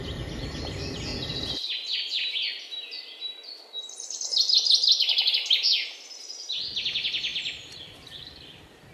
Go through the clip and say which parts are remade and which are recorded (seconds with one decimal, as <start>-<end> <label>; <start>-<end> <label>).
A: 0.0-1.1 remade; 1.1-5.3 recorded; 5.3-8.9 remade

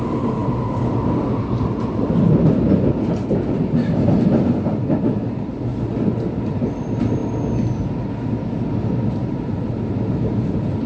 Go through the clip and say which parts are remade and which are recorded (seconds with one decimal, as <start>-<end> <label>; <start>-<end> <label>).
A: 0.0-9.2 recorded; 9.2-10.9 remade

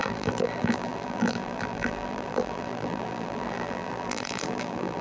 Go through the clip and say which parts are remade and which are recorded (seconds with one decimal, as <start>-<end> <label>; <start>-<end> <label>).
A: 0.0-5.0 remade

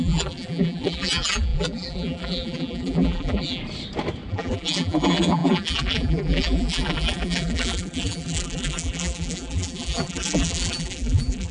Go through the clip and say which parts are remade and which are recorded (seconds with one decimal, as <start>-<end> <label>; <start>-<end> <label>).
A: 0.0-3.6 remade; 3.6-4.3 recorded; 4.3-11.5 remade

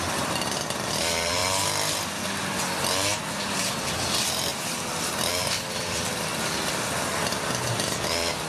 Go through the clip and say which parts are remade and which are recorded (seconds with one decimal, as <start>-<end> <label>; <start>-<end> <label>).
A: 0.0-1.4 remade; 1.4-3.8 recorded; 3.8-6.3 remade; 6.3-7.3 recorded; 7.3-8.5 remade